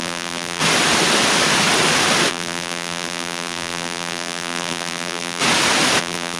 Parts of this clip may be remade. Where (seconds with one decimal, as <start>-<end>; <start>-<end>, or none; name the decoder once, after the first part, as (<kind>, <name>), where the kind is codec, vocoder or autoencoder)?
0.0-0.6 (vocoder, BigVGAN v2); 2.3-5.4; 6.0-6.4